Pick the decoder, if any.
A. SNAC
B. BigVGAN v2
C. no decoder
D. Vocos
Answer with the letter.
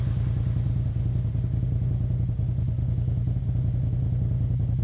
C